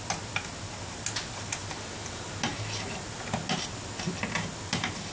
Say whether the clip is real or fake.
real